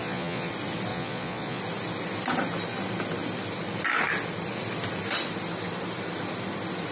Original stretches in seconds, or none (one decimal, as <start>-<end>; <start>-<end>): 0.5-0.9; 1.6-6.9